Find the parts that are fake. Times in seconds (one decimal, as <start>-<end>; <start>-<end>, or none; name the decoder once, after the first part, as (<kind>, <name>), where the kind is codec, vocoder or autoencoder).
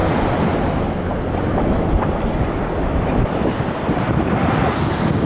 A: none